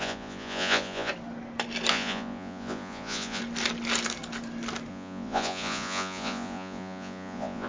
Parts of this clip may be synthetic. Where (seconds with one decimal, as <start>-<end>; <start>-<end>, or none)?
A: 0.0-1.1; 1.9-3.4; 4.9-7.7

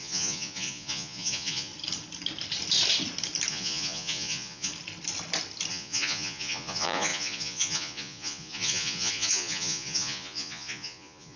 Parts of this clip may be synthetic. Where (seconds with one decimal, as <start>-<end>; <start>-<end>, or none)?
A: 0.0-1.7; 3.5-4.7; 5.7-11.4

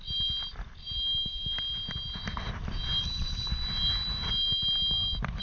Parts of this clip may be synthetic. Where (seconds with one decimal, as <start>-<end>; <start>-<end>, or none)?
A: none